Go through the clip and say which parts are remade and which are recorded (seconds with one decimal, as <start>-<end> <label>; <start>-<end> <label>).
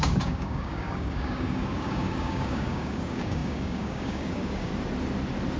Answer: 0.0-4.7 remade; 4.7-5.6 recorded